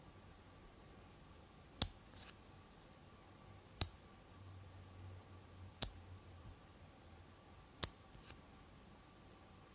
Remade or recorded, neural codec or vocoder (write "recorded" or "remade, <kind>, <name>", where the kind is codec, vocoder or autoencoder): recorded